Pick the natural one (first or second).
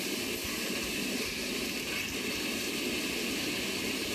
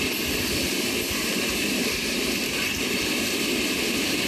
first